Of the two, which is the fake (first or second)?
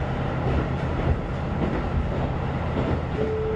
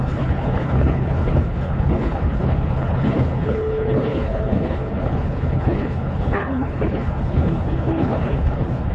second